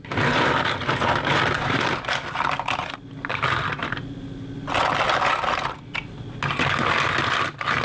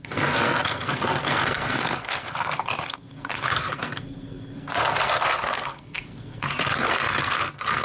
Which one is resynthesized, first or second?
second